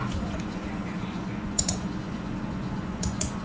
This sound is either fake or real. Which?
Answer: fake